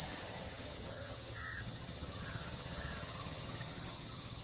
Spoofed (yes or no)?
yes